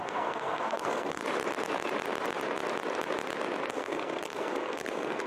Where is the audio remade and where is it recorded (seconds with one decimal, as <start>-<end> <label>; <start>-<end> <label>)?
0.0-1.2 remade; 1.2-3.7 recorded; 3.7-5.3 remade